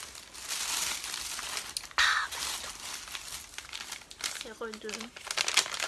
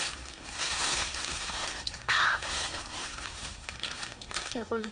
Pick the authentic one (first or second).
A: first